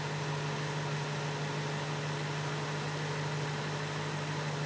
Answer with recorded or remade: recorded